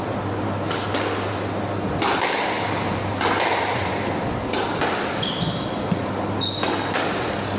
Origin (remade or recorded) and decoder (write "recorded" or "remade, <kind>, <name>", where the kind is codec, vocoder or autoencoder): recorded